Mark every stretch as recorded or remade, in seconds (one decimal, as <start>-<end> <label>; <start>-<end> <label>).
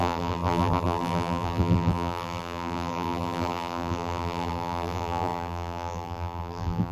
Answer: 0.0-6.9 remade